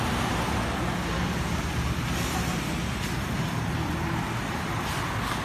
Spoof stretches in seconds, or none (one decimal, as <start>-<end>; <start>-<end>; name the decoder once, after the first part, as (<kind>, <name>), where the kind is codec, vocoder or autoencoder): 2.0-3.9 (vocoder, BigVGAN v2)